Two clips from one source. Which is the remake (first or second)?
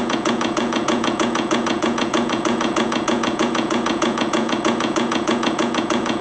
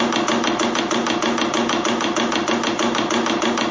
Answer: first